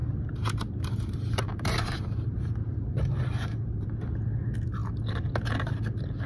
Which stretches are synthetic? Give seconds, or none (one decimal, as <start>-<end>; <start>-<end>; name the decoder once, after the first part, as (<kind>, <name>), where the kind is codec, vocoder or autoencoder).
0.0-3.8 (vocoder, BigVGAN v2)